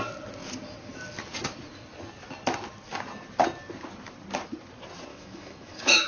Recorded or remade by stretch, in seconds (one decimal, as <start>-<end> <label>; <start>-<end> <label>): 0.0-5.1 recorded; 5.1-6.1 remade